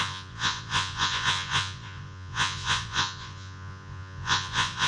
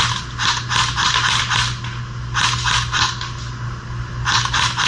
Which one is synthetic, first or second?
first